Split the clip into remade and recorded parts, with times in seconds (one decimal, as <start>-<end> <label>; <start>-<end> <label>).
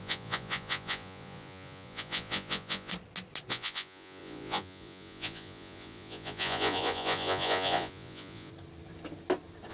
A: 0.0-2.9 remade; 2.9-3.5 recorded; 3.5-8.5 remade; 8.5-9.7 recorded